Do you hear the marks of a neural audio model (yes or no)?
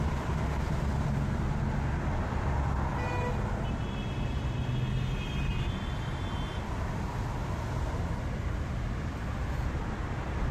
no